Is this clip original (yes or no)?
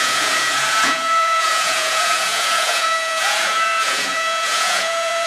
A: no